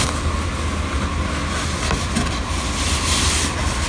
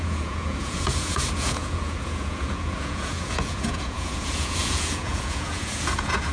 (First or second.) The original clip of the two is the first